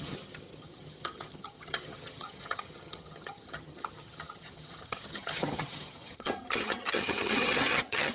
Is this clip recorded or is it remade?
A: remade